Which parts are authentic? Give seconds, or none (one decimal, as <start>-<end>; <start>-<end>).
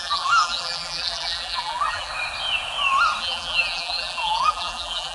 2.1-3.2